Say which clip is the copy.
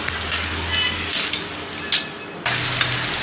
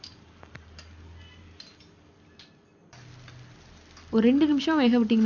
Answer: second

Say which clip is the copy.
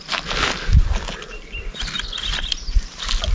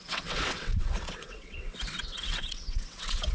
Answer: second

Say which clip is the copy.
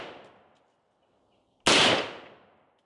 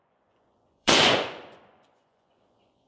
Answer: second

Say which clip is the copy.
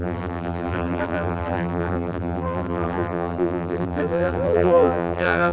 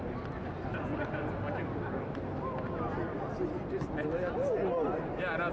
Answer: first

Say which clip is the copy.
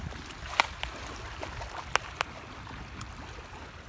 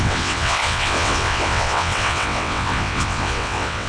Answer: second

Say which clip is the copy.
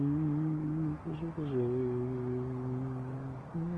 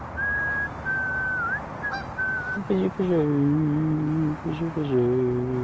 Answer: first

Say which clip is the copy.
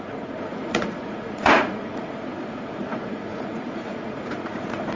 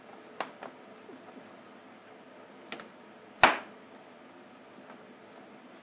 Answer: first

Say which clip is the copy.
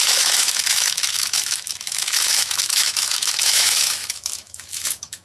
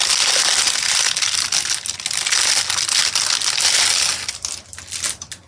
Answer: first